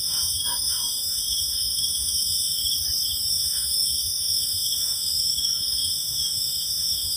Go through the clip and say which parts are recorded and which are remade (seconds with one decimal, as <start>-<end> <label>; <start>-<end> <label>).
0.0-2.6 remade; 2.6-3.3 recorded; 3.3-7.2 remade